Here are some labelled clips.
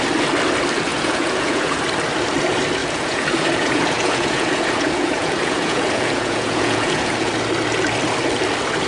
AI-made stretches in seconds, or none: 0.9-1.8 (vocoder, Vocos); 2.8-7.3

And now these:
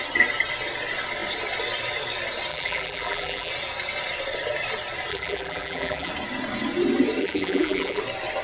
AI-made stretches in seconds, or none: 2.5-3.5 (vocoder, BigVGAN v2); 5.1-6.1; 7.2-8.0

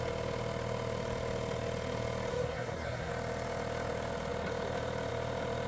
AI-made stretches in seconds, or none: 2.3-3.1 (codec, SNAC)